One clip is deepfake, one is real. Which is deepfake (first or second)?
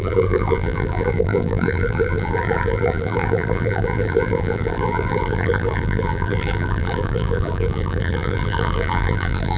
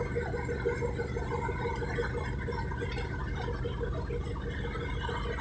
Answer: first